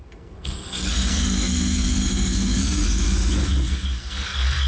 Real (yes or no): no